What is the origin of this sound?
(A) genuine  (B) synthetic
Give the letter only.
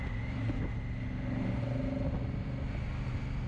A